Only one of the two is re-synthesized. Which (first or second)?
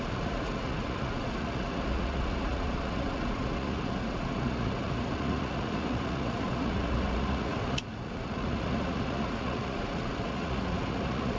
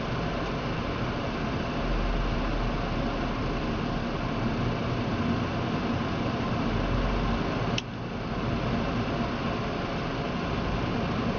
first